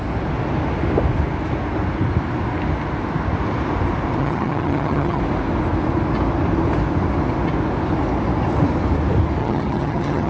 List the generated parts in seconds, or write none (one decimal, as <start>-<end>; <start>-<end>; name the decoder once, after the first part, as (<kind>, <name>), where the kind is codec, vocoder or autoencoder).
4.2-5.2 (vocoder, HiFi-GAN); 9.4-10.3